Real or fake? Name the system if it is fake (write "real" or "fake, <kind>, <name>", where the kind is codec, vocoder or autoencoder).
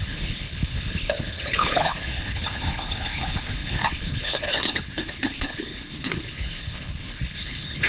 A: fake, codec, HILCodec